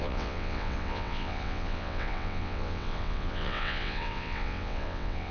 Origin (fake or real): fake